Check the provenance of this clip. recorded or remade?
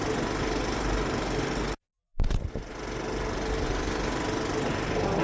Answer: recorded